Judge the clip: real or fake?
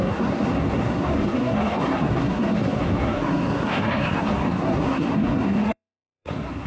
fake